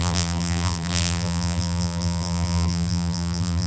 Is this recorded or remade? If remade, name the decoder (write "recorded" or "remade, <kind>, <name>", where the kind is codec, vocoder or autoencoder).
remade, vocoder, BigVGAN v2